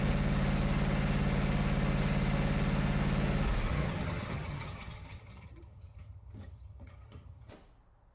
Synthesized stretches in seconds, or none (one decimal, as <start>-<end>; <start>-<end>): 3.7-7.5